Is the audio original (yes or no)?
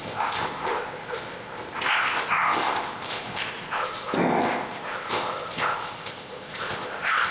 no